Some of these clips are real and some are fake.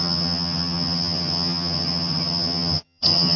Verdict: fake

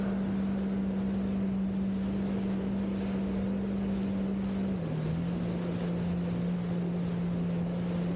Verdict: real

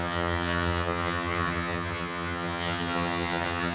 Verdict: fake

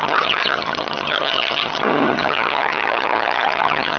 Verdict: fake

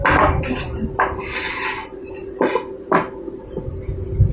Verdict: real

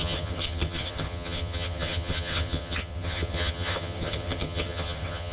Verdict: fake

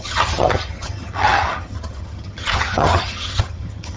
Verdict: fake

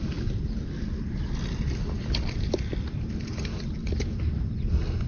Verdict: real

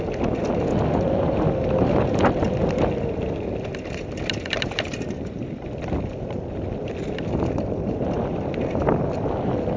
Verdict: real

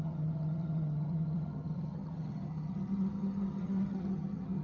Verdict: fake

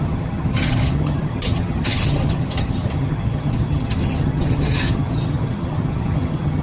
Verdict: fake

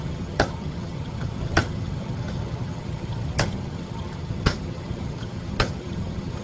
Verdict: fake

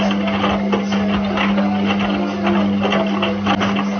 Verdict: real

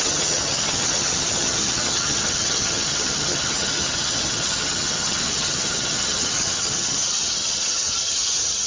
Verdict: fake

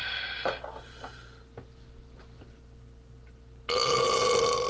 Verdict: real